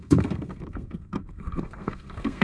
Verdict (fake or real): fake